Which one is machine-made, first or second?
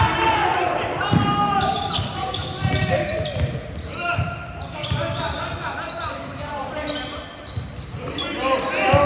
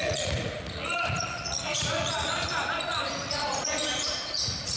second